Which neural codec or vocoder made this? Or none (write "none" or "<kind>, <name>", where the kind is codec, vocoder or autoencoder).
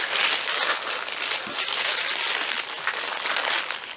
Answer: none